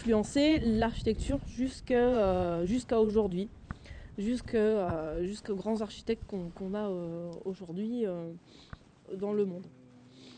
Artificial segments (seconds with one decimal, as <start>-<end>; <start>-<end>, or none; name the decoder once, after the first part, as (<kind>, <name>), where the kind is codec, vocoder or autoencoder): 0.5-3.3 (vocoder, Vocos); 4.5-6.6